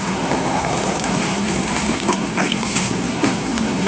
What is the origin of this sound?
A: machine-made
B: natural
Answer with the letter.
A